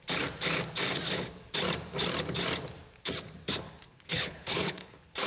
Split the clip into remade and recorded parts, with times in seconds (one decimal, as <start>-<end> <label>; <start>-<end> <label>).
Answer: 0.0-3.8 recorded; 3.8-5.3 remade